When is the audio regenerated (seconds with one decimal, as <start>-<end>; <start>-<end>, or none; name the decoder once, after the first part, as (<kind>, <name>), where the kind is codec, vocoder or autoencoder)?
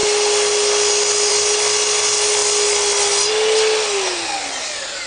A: none